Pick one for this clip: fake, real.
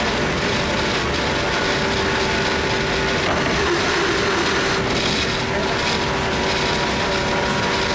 real